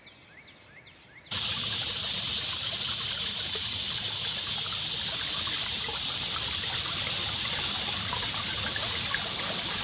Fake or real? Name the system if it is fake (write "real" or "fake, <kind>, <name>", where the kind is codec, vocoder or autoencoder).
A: real